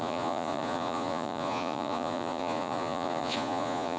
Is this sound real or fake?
fake